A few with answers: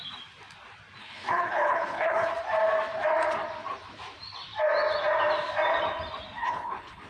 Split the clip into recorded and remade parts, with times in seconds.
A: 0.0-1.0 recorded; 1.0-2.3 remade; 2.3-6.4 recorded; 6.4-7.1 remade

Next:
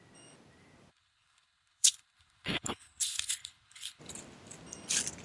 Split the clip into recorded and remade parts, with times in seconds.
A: 0.0-0.9 recorded; 0.9-4.0 remade; 4.0-5.2 recorded

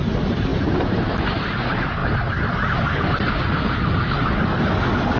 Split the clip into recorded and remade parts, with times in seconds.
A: 0.0-5.2 recorded

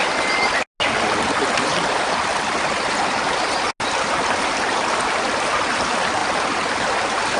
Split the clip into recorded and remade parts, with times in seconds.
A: 0.0-7.4 recorded

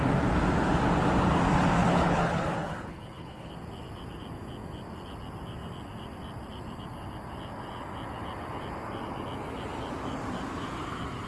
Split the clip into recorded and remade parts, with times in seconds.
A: 0.0-1.8 recorded; 1.8-3.5 remade; 3.5-11.3 recorded